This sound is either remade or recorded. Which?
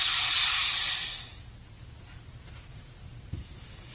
recorded